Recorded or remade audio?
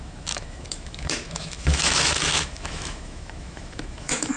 remade